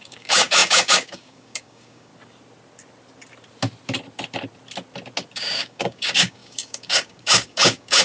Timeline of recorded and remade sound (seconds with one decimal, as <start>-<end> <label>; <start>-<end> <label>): 0.0-2.1 remade; 2.1-5.3 recorded; 5.3-8.0 remade